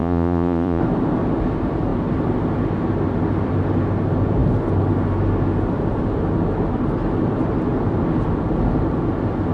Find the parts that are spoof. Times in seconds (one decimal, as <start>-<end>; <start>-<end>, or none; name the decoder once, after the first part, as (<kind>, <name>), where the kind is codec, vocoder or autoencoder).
0.0-0.8 (vocoder, Vocos)